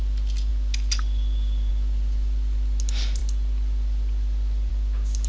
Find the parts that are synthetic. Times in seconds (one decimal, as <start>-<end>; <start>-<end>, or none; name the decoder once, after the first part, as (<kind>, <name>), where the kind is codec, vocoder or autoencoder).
none